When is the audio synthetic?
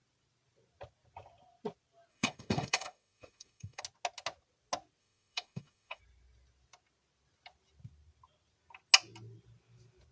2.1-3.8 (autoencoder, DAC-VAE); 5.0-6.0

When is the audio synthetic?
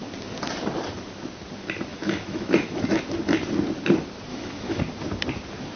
1.9-3.0 (autoencoder, DAC-VAE); 4.3-4.8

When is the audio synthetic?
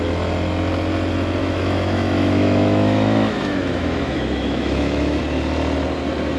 1.4-5.2 (autoencoder, DAC-VAE)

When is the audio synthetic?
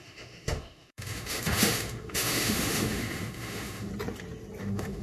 0.0-3.9 (autoencoder, DAC-VAE); 4.6-5.0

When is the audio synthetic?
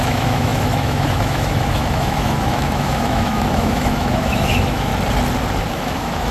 0.0-4.9 (autoencoder, DAC-VAE); 5.7-6.3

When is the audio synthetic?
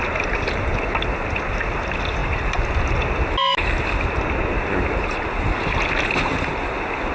none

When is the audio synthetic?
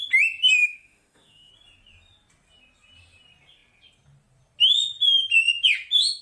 0.6-1.5 (autoencoder, DAC-VAE)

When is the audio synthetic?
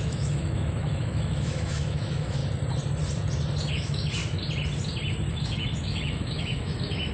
0.0-2.4 (autoencoder, DAC-VAE); 3.7-4.2; 5.3-7.1